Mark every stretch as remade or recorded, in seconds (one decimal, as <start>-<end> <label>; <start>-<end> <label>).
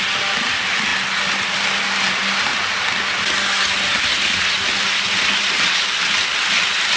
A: 0.0-7.0 recorded